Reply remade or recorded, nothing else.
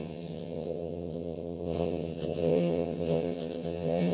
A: remade